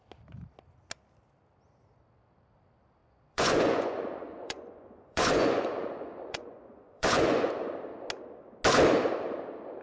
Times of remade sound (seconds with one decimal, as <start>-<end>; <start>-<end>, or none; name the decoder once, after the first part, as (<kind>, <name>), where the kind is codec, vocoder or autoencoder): 3.0-7.5 (vocoder, Vocos)